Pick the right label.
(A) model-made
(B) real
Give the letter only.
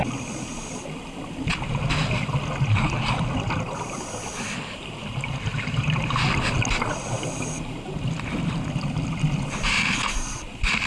B